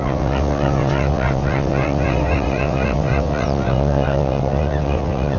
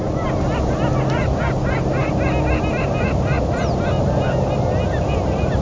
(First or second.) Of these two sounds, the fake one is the first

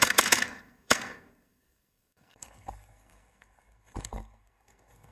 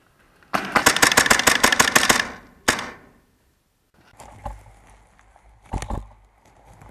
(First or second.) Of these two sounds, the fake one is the first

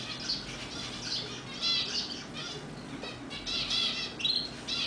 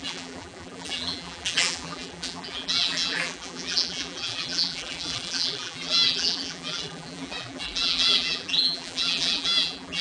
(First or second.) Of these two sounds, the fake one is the second